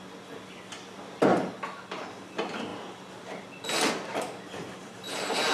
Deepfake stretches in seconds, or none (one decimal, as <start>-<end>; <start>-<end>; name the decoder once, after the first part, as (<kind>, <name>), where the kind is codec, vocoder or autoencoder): 4.8-5.5 (vocoder, BigVGAN v2)